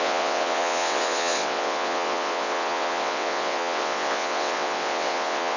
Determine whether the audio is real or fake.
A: fake